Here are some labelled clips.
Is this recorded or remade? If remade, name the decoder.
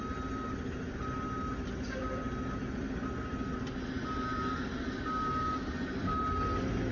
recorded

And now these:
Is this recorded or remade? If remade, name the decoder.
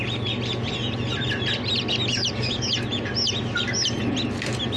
recorded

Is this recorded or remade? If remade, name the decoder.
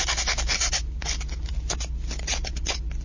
recorded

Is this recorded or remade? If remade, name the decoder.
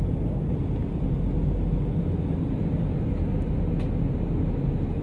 recorded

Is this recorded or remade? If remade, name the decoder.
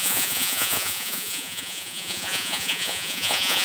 remade, vocoder, Vocos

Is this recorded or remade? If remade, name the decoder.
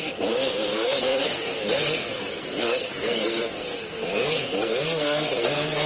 remade, codec, SNAC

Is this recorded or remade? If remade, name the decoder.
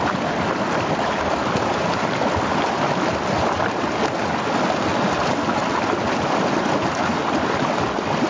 recorded